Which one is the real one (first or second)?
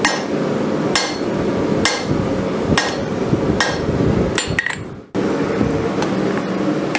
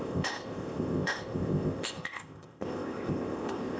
first